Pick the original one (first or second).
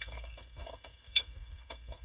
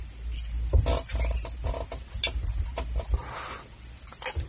second